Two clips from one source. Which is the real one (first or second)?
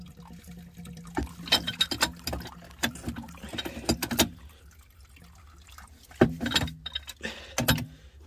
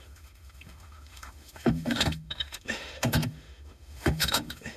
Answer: first